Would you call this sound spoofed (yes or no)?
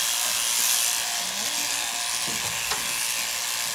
no